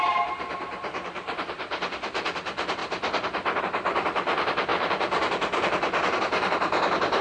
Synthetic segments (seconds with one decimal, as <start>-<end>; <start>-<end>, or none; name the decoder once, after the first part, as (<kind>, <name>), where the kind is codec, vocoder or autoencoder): 0.0-2.8 (vocoder, BigVGAN v2); 3.6-7.2